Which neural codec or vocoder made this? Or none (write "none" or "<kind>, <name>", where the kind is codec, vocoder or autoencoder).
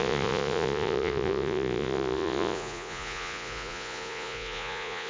vocoder, Vocos